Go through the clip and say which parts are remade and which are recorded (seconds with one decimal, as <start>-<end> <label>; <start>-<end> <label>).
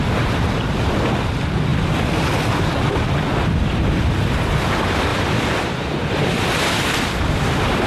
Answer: 0.0-5.1 recorded; 5.1-7.2 remade; 7.2-7.9 recorded